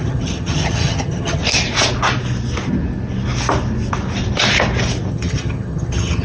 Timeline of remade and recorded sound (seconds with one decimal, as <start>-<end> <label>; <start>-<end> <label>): 0.0-1.4 remade; 1.4-5.1 recorded; 5.1-6.2 remade